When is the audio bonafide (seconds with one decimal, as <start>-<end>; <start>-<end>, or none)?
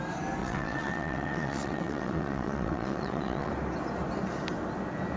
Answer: 0.0-0.4; 3.5-5.2